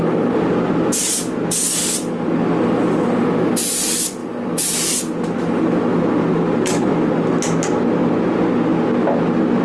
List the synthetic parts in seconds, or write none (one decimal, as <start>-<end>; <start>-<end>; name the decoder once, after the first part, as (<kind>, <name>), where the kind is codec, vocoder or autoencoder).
none